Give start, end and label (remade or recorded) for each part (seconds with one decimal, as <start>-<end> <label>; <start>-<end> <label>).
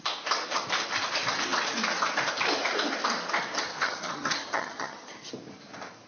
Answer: 0.0-3.7 recorded; 3.7-5.3 remade; 5.3-6.1 recorded